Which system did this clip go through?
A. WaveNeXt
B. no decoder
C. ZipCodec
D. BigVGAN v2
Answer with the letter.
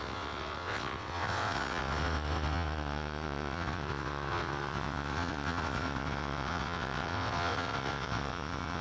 A